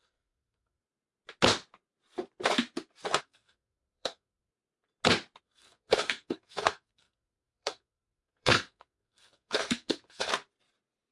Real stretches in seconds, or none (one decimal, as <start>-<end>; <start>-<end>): 0.8-3.2; 4.5-5.4; 10.3-11.1